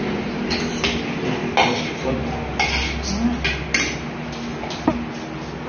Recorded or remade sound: recorded